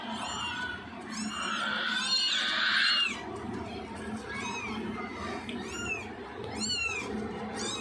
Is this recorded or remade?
recorded